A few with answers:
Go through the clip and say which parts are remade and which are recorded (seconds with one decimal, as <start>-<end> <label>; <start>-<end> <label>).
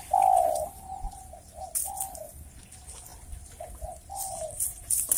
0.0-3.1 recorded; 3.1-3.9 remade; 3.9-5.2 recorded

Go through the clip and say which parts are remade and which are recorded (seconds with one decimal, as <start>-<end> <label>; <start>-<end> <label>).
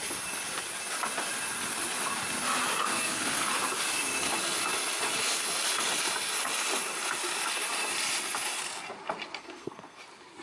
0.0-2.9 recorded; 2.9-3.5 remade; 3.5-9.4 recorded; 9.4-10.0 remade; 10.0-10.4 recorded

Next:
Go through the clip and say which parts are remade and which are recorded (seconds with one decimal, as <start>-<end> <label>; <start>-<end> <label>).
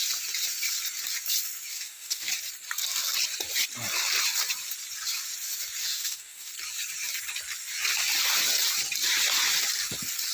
0.0-1.7 recorded; 1.7-2.3 remade; 2.3-5.8 recorded; 5.8-6.5 remade; 6.5-10.3 recorded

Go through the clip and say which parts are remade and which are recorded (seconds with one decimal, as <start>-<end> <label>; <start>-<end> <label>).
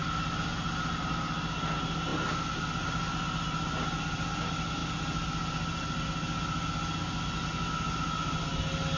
0.0-9.0 recorded